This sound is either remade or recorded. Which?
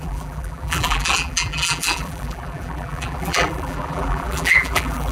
remade